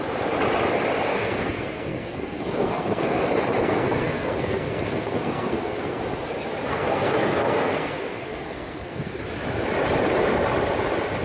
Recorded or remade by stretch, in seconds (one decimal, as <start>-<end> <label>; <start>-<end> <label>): 0.0-1.1 recorded; 1.1-3.2 remade; 3.2-3.6 recorded; 3.6-6.0 remade; 6.0-6.7 recorded; 6.7-9.2 remade; 9.2-11.2 recorded